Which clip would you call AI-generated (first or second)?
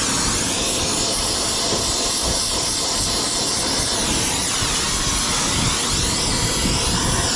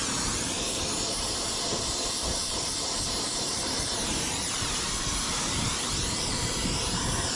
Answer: second